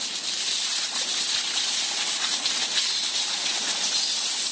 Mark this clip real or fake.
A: real